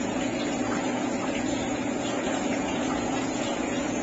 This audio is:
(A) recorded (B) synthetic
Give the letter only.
B